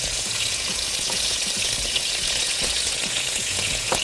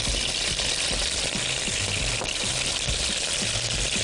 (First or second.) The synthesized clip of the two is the first